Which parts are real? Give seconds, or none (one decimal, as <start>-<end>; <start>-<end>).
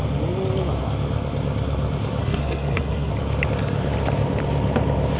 0.0-2.2; 3.1-5.2